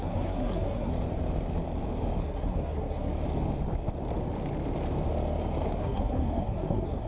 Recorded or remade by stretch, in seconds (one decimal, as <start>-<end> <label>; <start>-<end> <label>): 0.0-0.9 remade; 0.9-2.2 recorded; 2.2-3.1 remade; 3.1-5.8 recorded; 5.8-7.1 remade